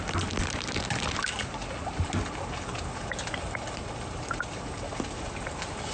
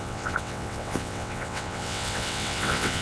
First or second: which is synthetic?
second